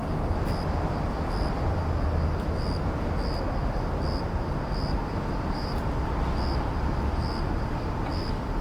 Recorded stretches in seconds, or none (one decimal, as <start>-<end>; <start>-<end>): 0.0-5.0; 5.8-8.6